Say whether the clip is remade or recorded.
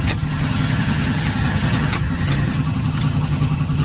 remade